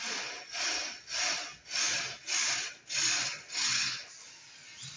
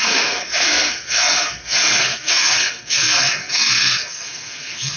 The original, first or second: first